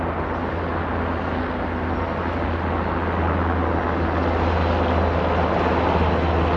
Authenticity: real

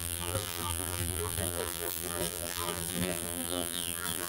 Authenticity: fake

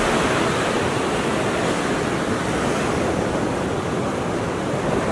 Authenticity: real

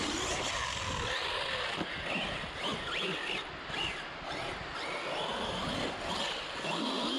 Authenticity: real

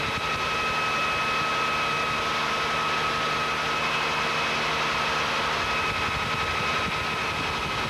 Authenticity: real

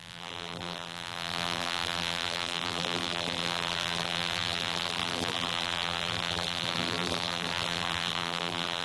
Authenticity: fake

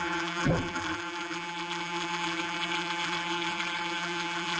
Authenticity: fake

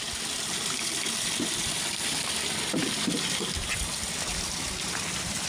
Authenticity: real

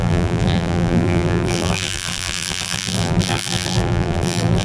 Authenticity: fake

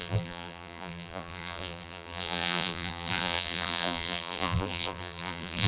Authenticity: fake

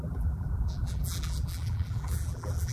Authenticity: fake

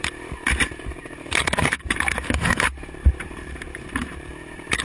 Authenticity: fake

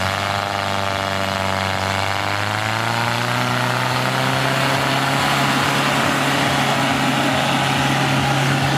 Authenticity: real